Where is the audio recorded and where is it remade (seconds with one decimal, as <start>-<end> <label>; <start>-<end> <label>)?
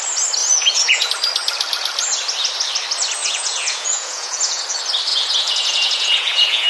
0.0-0.4 recorded; 0.4-1.1 remade; 1.1-3.2 recorded; 3.2-4.6 remade; 4.6-5.1 recorded; 5.1-6.7 remade